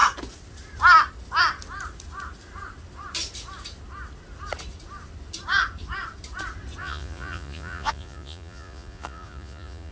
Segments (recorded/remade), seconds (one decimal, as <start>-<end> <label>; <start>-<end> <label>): 0.0-6.8 recorded; 6.8-9.9 remade